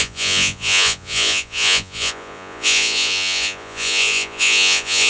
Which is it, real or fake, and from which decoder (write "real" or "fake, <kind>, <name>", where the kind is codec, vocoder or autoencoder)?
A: fake, vocoder, Vocos